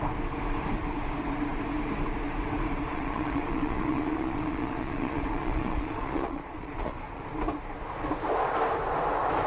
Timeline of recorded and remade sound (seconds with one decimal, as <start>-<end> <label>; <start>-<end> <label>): 0.0-2.9 recorded; 2.9-7.3 remade; 7.3-9.5 recorded